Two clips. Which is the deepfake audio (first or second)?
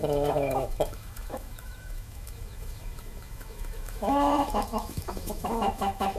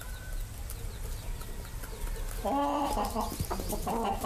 first